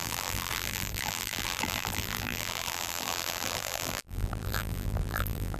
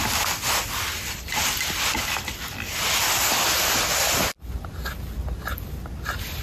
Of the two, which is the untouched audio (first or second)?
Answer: second